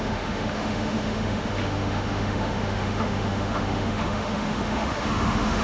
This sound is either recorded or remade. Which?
remade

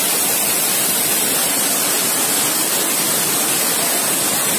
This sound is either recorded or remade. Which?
recorded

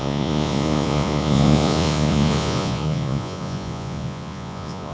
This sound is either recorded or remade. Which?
remade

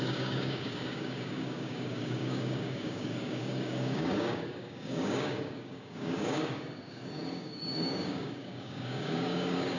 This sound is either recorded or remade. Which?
remade